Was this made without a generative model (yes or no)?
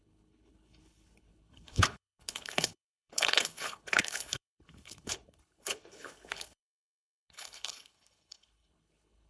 no